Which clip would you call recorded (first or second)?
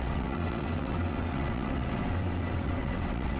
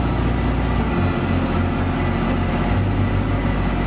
second